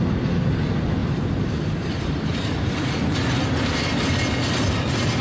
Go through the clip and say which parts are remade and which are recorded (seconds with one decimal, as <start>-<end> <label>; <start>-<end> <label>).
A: 0.0-1.0 recorded; 1.0-4.1 remade; 4.1-5.2 recorded